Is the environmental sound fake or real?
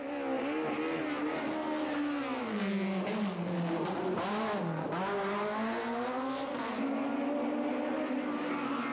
real